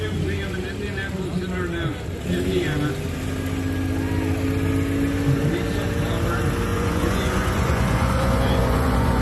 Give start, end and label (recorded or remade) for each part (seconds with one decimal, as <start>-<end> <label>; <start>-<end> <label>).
0.0-6.7 recorded; 6.7-9.2 remade